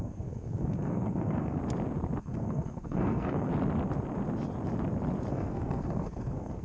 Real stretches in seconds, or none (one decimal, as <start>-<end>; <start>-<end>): 1.6-2.2; 3.5-5.3